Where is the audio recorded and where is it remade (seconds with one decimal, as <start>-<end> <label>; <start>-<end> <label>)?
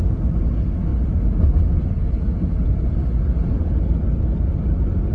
0.0-5.1 recorded